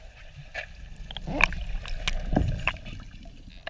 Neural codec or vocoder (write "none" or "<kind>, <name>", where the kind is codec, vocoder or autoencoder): none